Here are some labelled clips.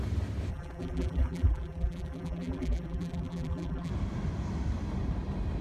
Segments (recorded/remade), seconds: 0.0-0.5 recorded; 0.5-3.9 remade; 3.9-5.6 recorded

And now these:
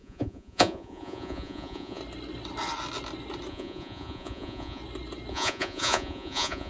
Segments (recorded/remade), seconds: 0.0-2.0 remade; 2.0-3.5 recorded; 3.5-4.8 remade; 4.8-5.3 recorded; 5.3-6.7 remade

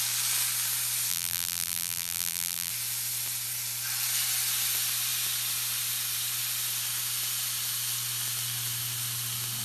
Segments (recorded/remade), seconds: 0.0-1.1 recorded; 1.1-2.7 remade; 2.7-9.6 recorded

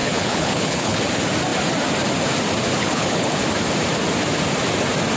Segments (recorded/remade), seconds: 0.0-1.0 remade; 1.0-2.8 recorded; 2.8-3.4 remade; 3.4-5.2 recorded